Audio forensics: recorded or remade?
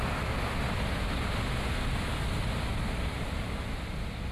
recorded